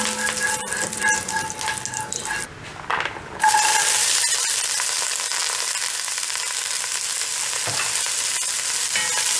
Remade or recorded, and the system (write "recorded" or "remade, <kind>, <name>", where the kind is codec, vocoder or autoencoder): recorded